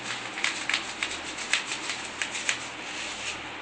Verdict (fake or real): real